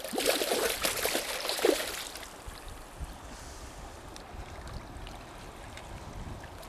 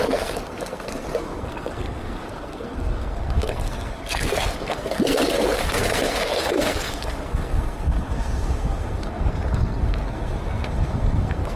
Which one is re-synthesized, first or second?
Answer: second